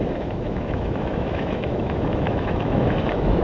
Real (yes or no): no